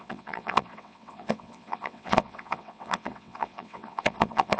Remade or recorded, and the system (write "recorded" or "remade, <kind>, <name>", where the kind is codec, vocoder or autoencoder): remade, vocoder, WaveNeXt